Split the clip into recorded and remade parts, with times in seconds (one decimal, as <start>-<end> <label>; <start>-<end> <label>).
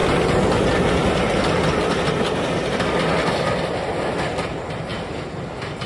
0.0-5.9 recorded